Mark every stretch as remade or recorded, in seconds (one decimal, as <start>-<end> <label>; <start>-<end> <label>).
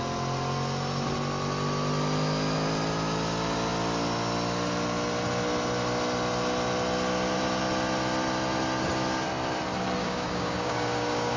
0.0-10.0 recorded; 10.0-11.4 remade